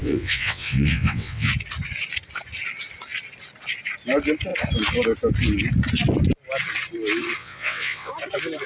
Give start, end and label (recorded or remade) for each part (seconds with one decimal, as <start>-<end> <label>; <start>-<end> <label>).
0.0-1.5 remade; 1.5-7.4 recorded; 7.4-8.1 remade; 8.1-8.7 recorded